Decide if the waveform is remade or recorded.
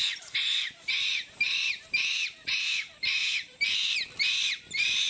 remade